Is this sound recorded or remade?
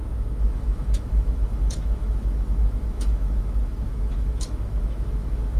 remade